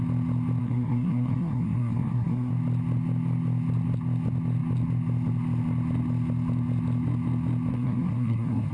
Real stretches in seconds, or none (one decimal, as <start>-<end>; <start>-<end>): 0.0-0.6; 2.5-7.7